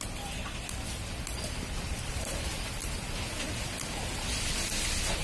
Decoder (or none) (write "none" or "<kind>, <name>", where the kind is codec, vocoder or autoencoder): vocoder, BigVGAN v2